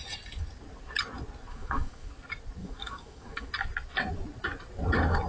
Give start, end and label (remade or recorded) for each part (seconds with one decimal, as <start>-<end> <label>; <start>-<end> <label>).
0.0-1.5 recorded; 1.5-2.1 remade; 2.1-2.6 recorded; 2.6-3.5 remade; 3.5-5.3 recorded